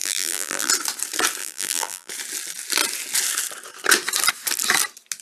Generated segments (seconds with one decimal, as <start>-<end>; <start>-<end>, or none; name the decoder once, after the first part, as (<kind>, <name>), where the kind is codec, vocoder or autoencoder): 0.0-0.7 (vocoder, BigVGAN v2); 1.4-2.1